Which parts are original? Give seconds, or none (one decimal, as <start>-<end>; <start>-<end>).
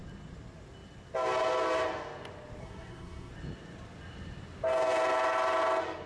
0.0-2.6; 3.3-6.1